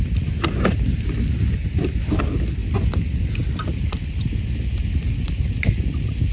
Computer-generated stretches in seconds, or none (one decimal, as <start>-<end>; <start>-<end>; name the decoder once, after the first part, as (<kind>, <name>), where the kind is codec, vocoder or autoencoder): 1.6-2.2 (vocoder, BigVGAN v2)